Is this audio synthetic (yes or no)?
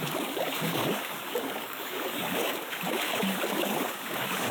yes